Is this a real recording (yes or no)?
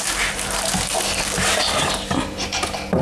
yes